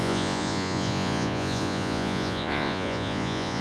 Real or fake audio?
fake